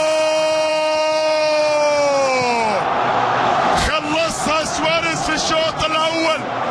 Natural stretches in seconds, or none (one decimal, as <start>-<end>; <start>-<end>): 0.0-0.7; 1.6-3.1; 4.3-6.7